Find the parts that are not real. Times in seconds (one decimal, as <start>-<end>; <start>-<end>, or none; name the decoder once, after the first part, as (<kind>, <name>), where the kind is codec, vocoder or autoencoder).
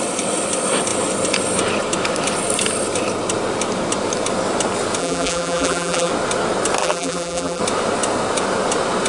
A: 5.0-6.1 (vocoder, BigVGAN v2); 6.8-7.6